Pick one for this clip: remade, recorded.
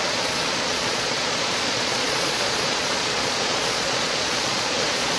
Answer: remade